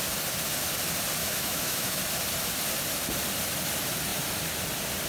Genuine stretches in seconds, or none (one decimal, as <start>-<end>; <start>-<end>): 0.0-1.2; 2.0-5.1